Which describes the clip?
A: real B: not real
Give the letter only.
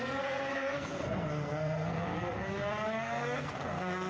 B